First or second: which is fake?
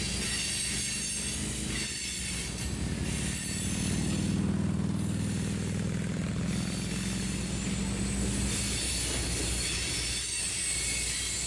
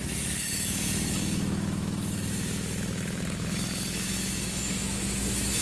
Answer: second